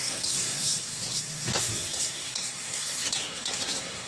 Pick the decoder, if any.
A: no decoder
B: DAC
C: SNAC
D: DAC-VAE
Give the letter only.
C